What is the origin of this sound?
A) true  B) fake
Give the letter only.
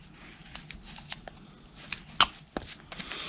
A